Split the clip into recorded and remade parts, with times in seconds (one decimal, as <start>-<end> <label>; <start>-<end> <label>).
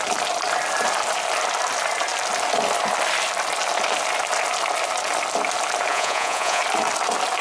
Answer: 0.0-5.9 recorded; 5.9-6.6 remade; 6.6-7.4 recorded